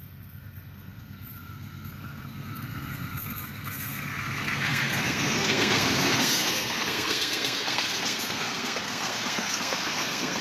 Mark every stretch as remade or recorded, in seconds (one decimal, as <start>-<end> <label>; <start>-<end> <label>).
0.0-10.4 remade